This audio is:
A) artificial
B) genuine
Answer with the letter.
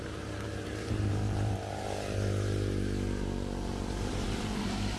A